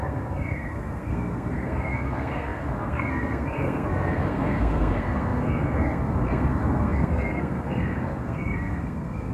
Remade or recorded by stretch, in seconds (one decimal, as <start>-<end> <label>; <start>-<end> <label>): 0.0-9.3 remade